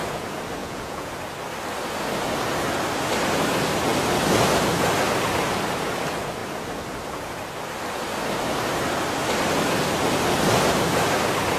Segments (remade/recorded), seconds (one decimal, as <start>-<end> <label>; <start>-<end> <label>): 0.0-0.6 recorded; 0.6-1.1 remade; 1.1-11.6 recorded